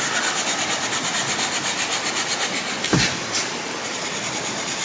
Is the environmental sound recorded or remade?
recorded